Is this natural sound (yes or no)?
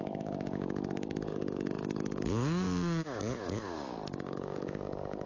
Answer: no